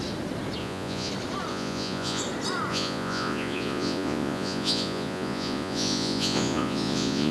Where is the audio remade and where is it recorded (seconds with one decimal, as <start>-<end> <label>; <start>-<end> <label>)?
0.0-0.6 recorded; 0.6-1.1 remade; 1.1-1.5 recorded; 1.5-2.2 remade; 2.2-2.7 recorded; 2.7-7.3 remade